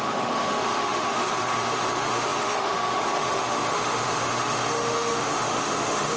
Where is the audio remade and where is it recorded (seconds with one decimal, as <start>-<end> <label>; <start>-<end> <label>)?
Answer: 0.0-6.2 remade